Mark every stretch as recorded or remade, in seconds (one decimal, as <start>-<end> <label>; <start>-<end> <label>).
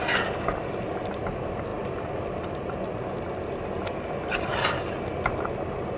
0.0-6.0 recorded